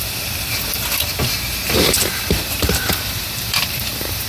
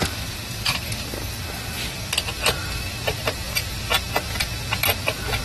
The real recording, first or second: second